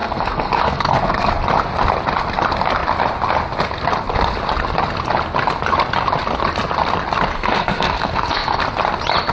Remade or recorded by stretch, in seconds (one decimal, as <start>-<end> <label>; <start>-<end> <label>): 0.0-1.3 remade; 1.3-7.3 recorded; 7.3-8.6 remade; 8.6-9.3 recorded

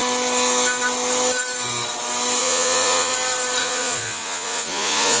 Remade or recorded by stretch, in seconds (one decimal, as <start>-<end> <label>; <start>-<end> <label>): 0.0-2.4 recorded; 2.4-3.1 remade; 3.1-3.6 recorded; 3.6-5.2 remade

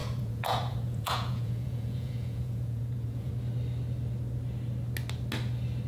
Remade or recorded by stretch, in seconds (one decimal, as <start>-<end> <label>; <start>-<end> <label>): 0.0-3.3 remade; 3.3-5.9 recorded

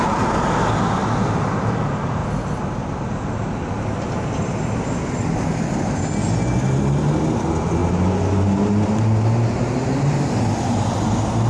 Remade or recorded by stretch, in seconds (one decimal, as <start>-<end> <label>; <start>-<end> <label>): 0.0-11.5 recorded

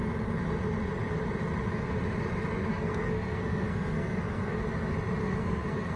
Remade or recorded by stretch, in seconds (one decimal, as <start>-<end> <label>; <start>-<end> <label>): 0.0-2.7 recorded; 2.7-4.6 remade; 4.6-5.2 recorded; 5.2-6.0 remade

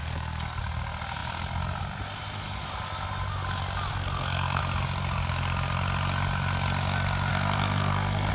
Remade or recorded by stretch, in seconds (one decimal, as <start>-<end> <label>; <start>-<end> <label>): 0.0-0.6 remade; 0.6-3.9 recorded; 3.9-4.6 remade; 4.6-7.3 recorded; 7.3-8.3 remade